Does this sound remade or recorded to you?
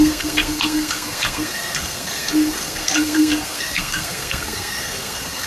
remade